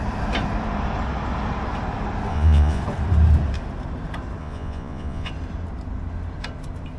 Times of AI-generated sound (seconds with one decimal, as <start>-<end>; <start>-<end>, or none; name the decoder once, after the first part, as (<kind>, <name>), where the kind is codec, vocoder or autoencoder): 2.3-2.8 (vocoder, Vocos); 4.4-5.3